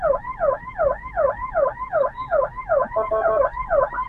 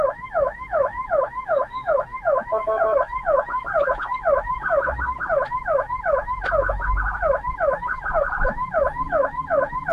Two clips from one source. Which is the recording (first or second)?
first